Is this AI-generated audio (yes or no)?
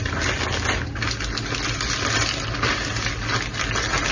no